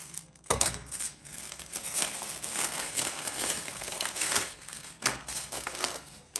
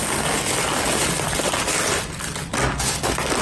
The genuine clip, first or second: second